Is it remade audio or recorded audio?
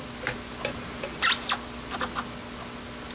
recorded